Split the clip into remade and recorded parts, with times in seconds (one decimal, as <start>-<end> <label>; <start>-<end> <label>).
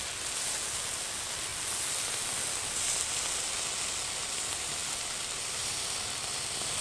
0.0-6.8 recorded